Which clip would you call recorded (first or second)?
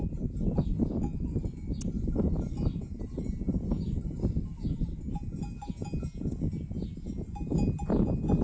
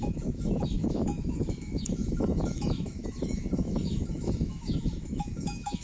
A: first